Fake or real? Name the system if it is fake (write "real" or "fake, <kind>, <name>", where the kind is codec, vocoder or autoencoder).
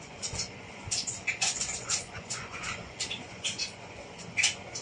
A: fake, vocoder, Vocos